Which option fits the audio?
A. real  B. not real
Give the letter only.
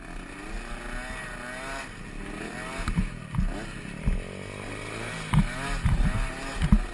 A